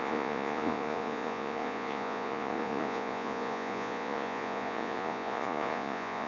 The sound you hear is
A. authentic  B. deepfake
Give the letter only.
B